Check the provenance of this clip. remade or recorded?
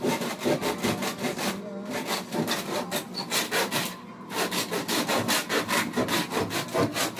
recorded